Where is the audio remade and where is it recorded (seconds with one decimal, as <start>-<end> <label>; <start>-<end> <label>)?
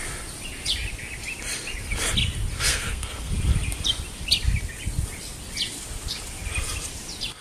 0.0-2.7 recorded; 2.7-3.3 remade; 3.3-7.4 recorded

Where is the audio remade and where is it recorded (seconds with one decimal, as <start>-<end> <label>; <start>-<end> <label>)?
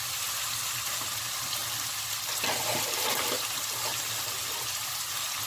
0.0-3.9 recorded; 3.9-4.9 remade; 4.9-5.5 recorded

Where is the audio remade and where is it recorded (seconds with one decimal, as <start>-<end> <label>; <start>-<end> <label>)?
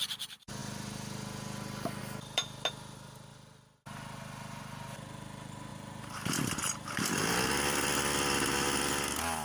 0.0-5.7 recorded; 5.7-7.5 remade; 7.5-9.4 recorded